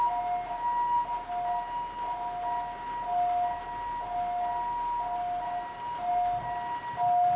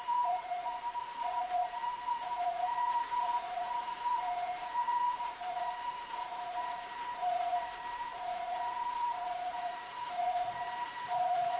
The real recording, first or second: first